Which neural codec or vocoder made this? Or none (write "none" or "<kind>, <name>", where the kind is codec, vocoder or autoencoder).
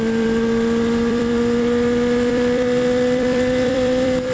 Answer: vocoder, BigVGAN v2